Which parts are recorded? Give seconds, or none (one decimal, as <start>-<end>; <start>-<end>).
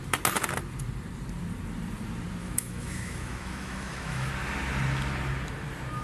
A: 0.0-2.4; 4.3-6.0